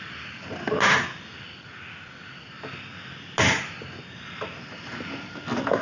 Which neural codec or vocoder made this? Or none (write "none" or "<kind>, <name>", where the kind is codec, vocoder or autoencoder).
none